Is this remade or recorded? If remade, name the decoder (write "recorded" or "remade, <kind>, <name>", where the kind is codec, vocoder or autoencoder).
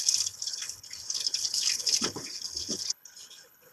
remade, codec, HILCodec